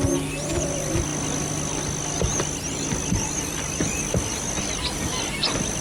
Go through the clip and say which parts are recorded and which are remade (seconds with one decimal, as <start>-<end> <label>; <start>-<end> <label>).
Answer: 0.0-5.8 recorded